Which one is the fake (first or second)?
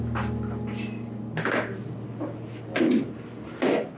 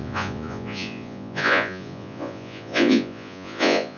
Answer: second